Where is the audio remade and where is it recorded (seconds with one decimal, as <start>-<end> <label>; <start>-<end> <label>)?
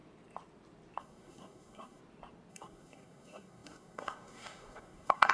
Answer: 0.0-1.0 recorded; 1.0-2.0 remade; 2.0-2.5 recorded; 2.5-5.3 remade